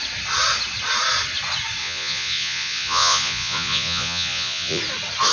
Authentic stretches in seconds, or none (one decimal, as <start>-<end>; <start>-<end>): 0.0-1.8; 4.8-5.3